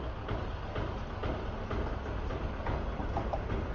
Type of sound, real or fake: real